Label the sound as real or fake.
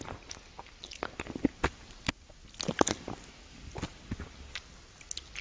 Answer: real